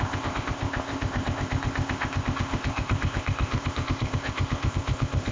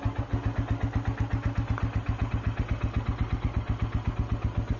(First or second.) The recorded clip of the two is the second